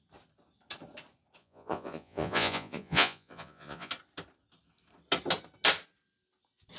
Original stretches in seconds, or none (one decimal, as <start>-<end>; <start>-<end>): 0.0-1.4; 3.9-6.8